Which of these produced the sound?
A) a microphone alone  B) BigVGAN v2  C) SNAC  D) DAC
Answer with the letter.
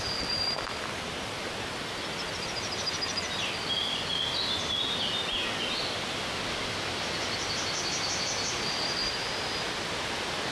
A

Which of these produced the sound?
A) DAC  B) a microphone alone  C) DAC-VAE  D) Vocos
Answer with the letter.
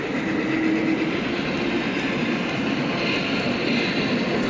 B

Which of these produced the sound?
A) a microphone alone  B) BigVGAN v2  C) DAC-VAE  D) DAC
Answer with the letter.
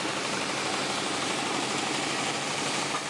B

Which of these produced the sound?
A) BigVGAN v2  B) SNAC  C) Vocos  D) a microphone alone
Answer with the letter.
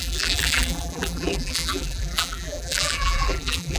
A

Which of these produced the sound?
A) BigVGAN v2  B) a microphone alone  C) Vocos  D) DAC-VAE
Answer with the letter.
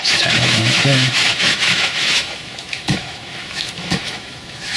D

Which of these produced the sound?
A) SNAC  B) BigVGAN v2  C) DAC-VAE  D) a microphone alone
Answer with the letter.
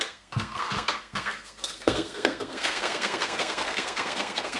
A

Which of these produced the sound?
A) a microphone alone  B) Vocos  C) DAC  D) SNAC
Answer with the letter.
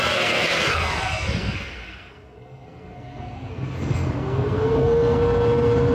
D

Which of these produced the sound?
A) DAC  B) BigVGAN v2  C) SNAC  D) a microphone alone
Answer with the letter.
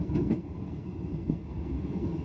C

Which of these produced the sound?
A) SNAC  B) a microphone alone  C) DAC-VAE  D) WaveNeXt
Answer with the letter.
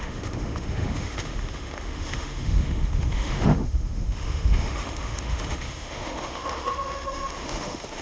C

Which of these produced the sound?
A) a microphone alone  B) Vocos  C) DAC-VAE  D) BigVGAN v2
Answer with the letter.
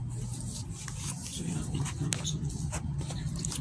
A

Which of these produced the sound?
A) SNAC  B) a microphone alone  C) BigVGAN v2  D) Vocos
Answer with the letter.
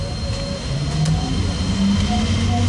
B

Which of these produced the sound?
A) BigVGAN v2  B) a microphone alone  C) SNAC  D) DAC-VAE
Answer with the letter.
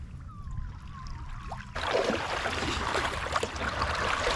B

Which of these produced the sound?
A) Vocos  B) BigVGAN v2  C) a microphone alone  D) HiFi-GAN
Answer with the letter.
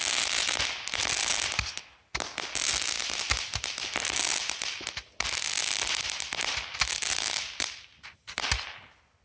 C